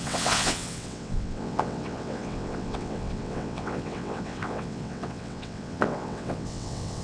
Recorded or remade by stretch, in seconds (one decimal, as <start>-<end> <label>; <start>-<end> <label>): 0.0-7.0 remade